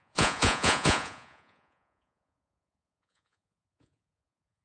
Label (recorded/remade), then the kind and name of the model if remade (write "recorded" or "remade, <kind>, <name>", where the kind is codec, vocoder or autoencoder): remade, vocoder, Vocos